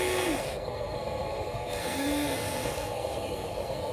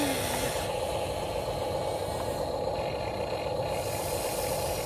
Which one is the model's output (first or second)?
first